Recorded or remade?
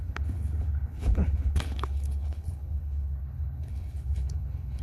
remade